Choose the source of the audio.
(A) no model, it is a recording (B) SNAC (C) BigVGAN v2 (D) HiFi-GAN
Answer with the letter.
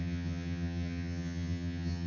D